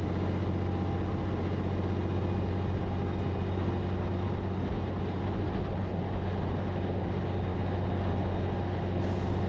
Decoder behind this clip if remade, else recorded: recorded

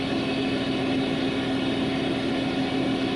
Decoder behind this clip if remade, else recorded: recorded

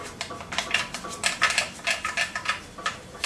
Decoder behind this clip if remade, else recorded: recorded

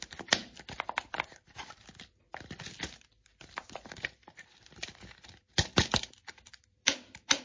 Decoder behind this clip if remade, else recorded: remade, vocoder, BigVGAN v2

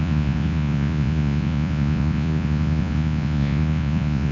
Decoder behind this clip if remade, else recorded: remade, vocoder, Vocos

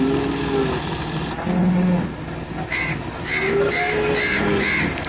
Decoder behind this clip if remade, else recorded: recorded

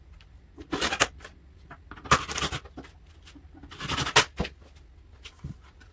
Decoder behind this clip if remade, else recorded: recorded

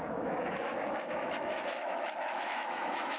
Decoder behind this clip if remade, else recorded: remade, autoencoder, DAC-VAE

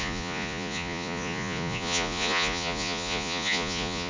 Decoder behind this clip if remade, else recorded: remade, vocoder, Vocos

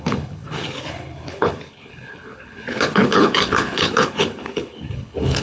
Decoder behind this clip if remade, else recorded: remade, codec, HILCodec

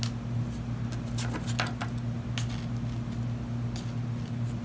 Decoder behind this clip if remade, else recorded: recorded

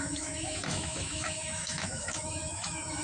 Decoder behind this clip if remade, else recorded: remade, autoencoder, DAC-VAE